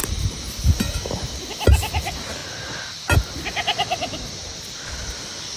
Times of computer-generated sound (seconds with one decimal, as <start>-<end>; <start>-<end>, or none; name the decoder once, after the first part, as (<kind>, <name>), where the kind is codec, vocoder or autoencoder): 0.0-0.5 (vocoder, BigVGAN v2)